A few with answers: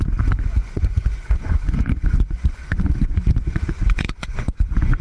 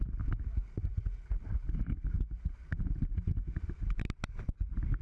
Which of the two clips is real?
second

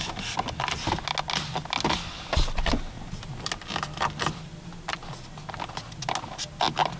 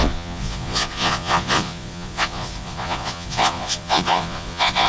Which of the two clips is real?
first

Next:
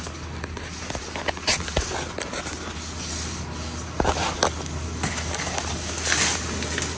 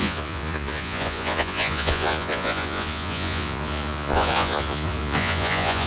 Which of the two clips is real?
first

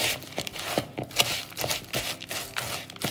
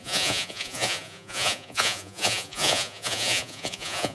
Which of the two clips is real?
first